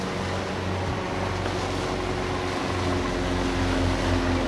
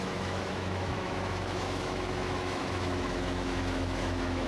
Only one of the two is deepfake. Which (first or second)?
second